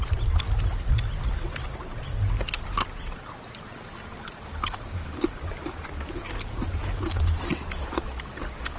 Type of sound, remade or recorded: recorded